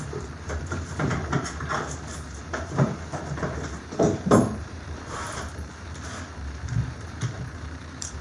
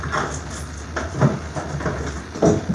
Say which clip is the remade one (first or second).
first